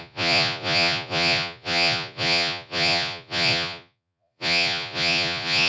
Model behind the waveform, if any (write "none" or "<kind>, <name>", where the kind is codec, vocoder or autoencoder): vocoder, Vocos